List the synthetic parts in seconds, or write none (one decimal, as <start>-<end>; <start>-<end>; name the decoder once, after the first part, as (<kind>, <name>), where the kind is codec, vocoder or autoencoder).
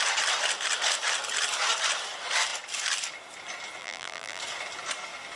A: 3.8-4.4 (vocoder, BigVGAN v2)